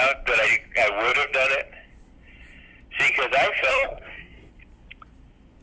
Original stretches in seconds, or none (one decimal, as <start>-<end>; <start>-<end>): 0.0-3.7; 4.5-5.6